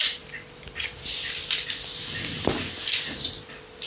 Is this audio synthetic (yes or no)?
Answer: no